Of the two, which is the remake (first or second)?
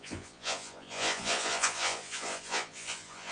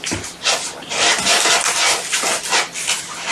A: first